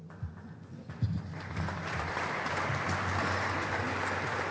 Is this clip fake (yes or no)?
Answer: no